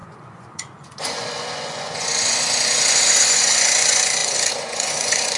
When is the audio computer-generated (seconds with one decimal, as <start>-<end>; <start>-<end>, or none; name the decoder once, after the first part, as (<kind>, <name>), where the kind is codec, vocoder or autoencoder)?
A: 0.0-5.4 (vocoder, Vocos)